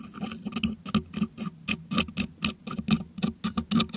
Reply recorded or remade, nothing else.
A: recorded